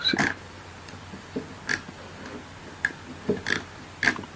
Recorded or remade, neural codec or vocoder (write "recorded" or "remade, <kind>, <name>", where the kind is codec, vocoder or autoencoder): recorded